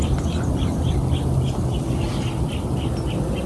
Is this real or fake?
real